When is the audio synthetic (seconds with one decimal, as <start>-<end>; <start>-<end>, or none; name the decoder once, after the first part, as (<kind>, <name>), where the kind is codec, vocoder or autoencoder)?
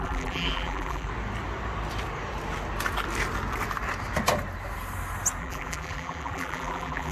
0.0-1.1 (vocoder, BigVGAN v2); 5.4-7.1